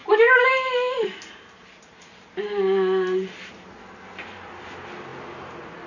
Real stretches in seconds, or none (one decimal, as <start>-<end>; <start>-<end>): 3.5-5.9